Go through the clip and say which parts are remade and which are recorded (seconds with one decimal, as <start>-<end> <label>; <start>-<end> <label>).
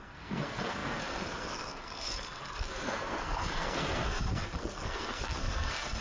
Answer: 0.0-6.0 remade